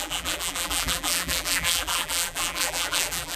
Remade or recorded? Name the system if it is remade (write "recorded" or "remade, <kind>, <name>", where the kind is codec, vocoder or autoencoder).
remade, vocoder, BigVGAN v2